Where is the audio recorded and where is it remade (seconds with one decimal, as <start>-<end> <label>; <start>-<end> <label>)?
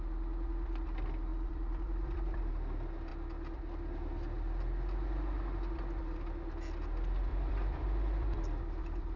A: 0.0-1.3 recorded; 1.3-2.5 remade; 2.5-7.3 recorded; 7.3-8.6 remade; 8.6-9.2 recorded